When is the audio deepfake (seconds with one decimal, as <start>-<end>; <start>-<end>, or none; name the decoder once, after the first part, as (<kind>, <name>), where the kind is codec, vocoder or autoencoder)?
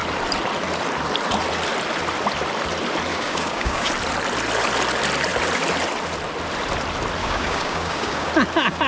3.1-3.9 (codec, DAC); 7.2-8.3